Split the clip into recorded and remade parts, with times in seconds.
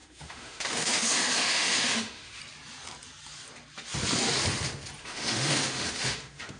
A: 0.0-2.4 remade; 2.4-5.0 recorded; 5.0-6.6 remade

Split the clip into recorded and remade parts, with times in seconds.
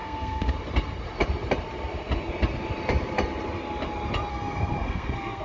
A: 0.0-0.5 remade; 0.5-4.3 recorded; 4.3-5.4 remade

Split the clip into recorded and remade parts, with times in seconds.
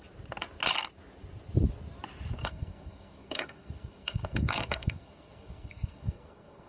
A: 0.0-2.4 recorded; 2.4-6.7 remade